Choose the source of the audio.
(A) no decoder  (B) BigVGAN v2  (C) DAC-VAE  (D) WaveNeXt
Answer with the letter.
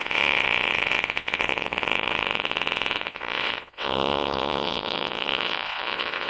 D